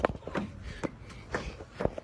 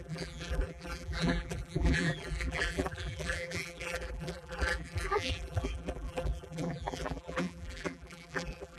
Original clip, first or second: first